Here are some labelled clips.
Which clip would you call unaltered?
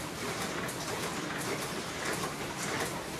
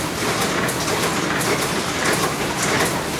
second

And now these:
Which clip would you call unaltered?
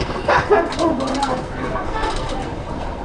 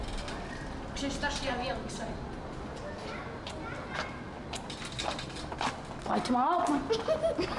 second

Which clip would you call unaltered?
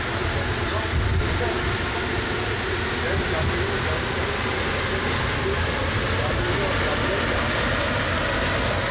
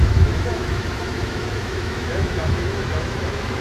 first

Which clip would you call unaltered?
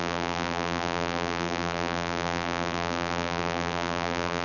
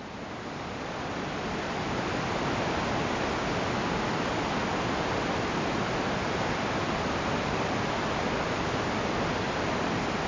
second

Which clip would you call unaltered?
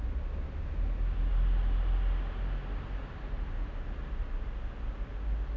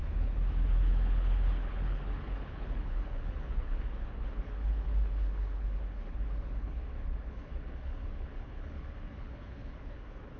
first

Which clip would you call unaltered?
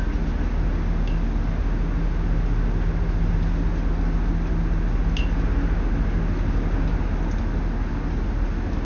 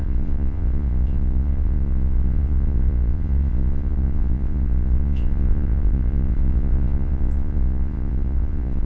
first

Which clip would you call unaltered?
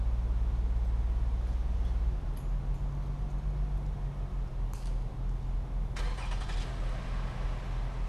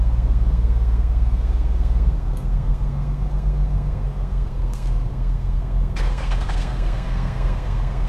first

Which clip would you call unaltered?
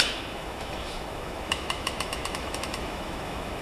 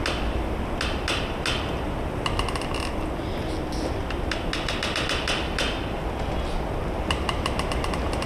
second